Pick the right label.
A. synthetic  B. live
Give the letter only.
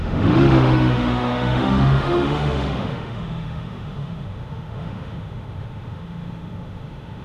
A